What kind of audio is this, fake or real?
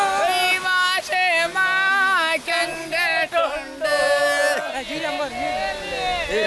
real